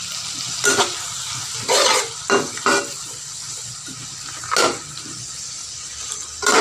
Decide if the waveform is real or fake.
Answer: real